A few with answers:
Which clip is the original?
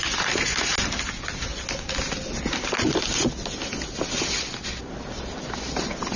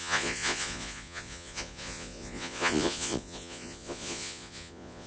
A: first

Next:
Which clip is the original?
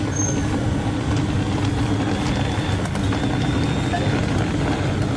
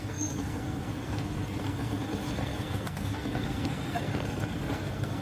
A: first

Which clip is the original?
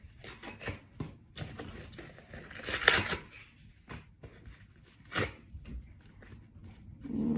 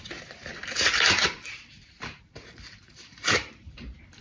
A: first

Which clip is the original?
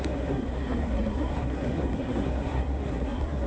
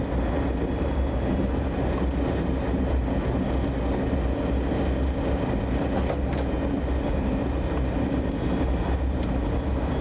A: second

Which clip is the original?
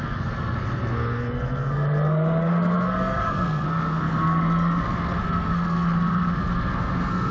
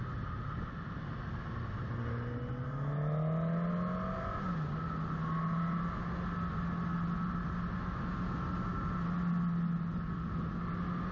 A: second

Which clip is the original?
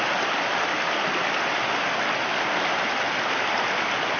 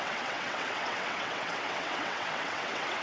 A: first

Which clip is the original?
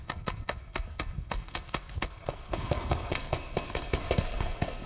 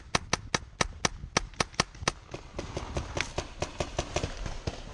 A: second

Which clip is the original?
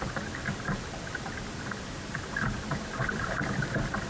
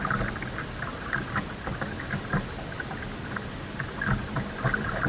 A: second